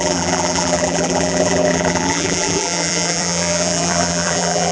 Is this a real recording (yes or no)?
no